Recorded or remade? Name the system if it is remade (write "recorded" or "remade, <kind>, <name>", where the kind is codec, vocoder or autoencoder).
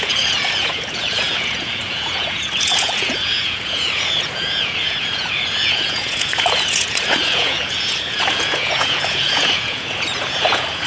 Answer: remade, vocoder, Vocos